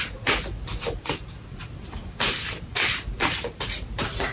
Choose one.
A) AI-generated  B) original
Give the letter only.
A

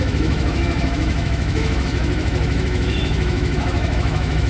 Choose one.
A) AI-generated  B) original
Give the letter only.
A